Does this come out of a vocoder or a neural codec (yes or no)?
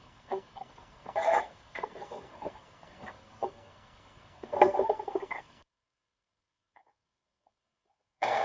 yes